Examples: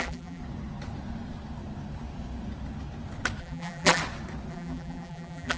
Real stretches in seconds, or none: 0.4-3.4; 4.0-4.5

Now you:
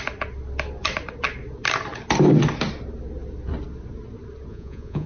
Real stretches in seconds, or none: 0.0-4.5

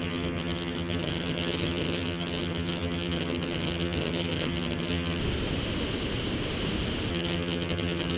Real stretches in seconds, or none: 5.2-7.1

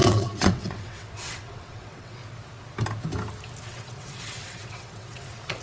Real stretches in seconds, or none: 2.2-3.6

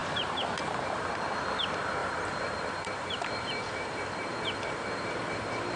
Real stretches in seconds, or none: 1.1-2.0

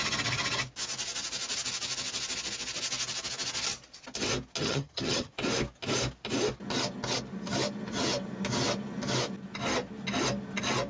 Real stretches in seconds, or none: 0.0-4.6; 5.3-10.9

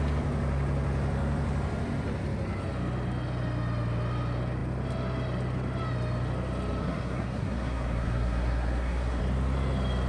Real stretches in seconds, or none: 0.0-6.8; 9.2-10.1